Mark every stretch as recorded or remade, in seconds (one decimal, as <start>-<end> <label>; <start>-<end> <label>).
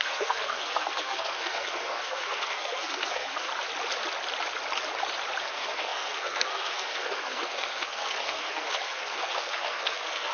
0.0-3.5 remade; 3.5-5.4 recorded; 5.4-10.3 remade